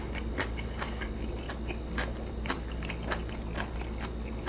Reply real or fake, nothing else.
real